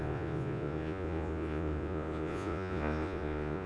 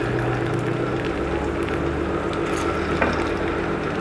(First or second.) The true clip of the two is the second